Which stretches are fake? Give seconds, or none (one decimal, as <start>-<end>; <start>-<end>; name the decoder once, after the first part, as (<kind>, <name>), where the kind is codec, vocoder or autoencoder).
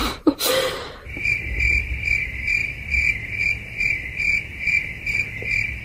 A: 0.0-1.4 (vocoder, BigVGAN v2)